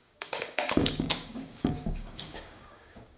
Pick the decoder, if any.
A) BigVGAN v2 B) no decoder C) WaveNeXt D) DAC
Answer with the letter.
D